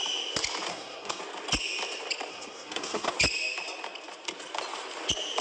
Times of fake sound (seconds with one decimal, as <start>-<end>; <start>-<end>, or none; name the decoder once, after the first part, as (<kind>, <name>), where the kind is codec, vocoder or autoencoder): 0.7-1.2 (codec, SNAC); 2.3-3.1